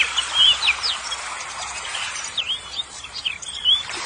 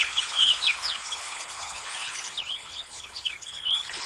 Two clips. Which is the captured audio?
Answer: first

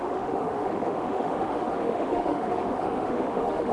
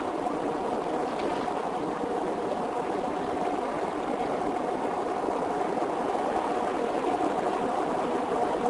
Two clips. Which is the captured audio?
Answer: second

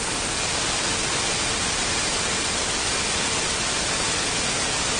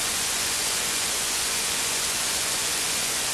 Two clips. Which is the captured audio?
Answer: first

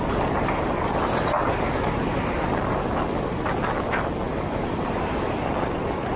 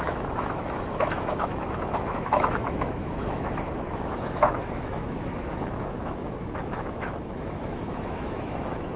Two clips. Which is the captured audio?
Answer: first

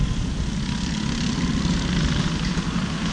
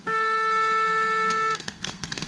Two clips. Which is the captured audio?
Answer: first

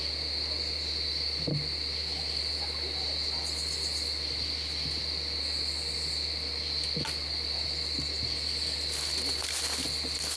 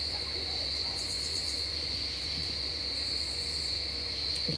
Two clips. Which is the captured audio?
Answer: first